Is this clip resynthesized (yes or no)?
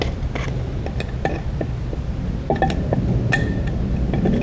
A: no